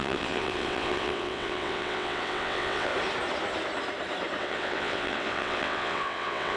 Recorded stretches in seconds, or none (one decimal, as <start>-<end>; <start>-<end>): 2.9-4.4